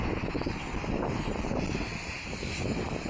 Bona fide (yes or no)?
yes